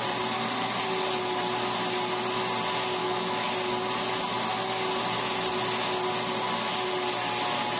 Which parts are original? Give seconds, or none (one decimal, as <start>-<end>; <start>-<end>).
0.0-3.0; 3.5-7.8